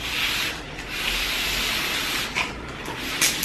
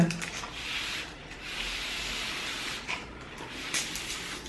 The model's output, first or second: second